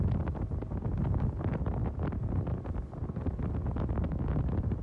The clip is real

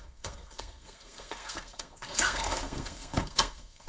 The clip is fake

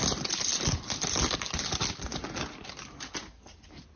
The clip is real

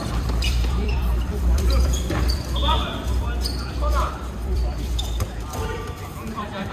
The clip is fake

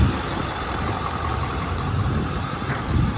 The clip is fake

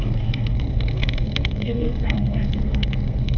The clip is fake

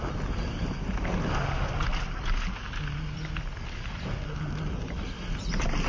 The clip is real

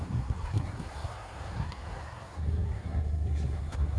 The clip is fake